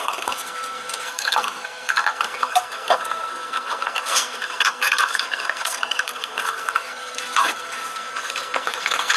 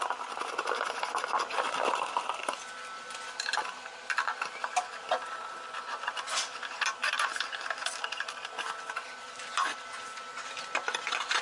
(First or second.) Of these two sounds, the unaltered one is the second